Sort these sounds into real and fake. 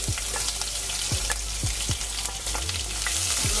real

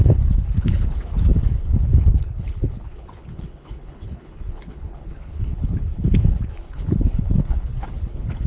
fake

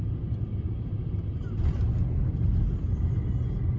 real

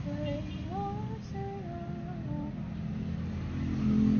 real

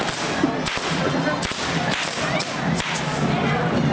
real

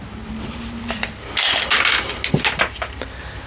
real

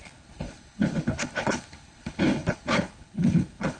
fake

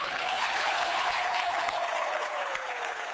fake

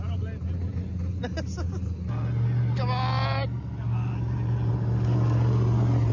real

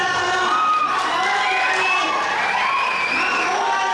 real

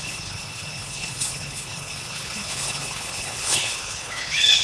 fake